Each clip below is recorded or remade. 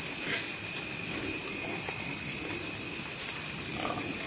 recorded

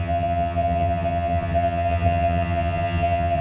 remade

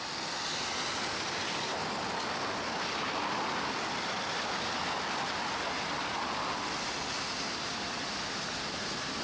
recorded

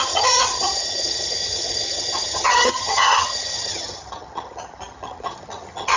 remade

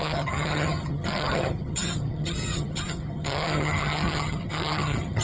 remade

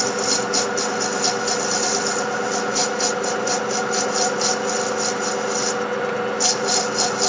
recorded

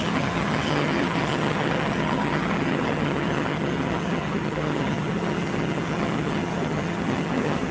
remade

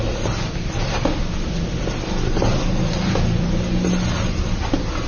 recorded